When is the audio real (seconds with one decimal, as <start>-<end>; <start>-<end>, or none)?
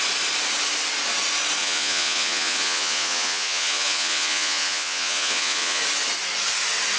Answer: 0.0-1.6; 5.8-7.0